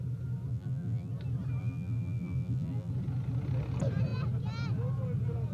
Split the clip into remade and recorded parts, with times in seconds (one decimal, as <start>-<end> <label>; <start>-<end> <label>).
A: 0.0-0.5 recorded; 0.5-1.1 remade; 1.1-1.6 recorded; 1.6-2.9 remade; 2.9-5.5 recorded